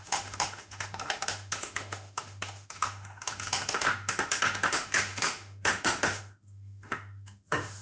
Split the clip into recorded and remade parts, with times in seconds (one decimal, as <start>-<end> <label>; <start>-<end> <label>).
0.0-7.8 remade